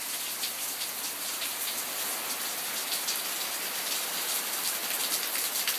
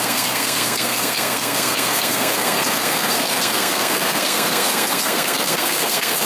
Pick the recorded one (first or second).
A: first